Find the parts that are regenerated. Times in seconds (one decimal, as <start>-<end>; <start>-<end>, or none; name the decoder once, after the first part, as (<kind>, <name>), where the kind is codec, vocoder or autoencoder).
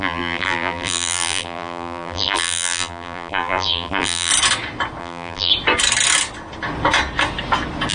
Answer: 0.0-4.3 (vocoder, BigVGAN v2); 5.0-5.5